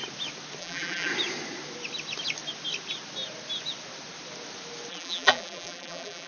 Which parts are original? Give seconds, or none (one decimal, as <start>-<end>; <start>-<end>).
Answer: 0.0-0.6; 1.1-4.9